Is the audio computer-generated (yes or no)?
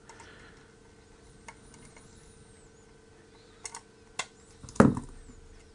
no